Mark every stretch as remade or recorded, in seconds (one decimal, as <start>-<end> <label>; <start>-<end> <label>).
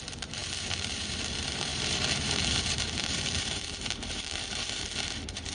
0.0-5.5 remade